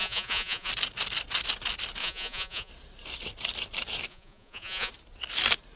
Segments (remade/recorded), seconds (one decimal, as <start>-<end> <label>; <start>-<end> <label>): 0.0-0.7 remade; 0.7-2.0 recorded; 2.0-2.7 remade; 2.7-4.1 recorded; 4.1-4.9 remade; 4.9-5.8 recorded